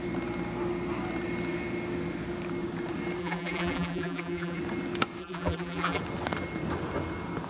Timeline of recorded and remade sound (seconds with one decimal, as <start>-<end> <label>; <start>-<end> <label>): 0.0-3.2 recorded; 3.2-4.6 remade; 4.6-5.2 recorded; 5.2-6.0 remade; 6.0-7.5 recorded